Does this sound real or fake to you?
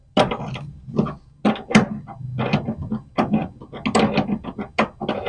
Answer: real